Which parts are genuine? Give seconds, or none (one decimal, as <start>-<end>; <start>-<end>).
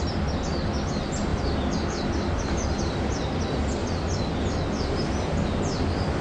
0.0-1.3; 3.0-6.2